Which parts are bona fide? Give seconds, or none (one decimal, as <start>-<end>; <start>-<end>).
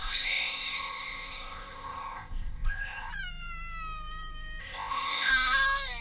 3.1-4.6; 5.3-6.0